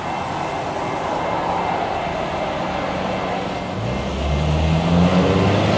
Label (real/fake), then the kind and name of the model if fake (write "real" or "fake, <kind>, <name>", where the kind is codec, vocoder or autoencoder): real